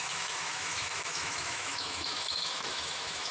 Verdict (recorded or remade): remade